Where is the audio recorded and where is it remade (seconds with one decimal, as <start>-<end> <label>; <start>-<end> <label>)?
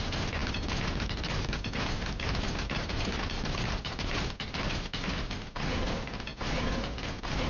0.0-7.5 recorded